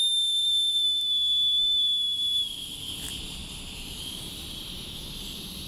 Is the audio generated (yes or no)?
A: no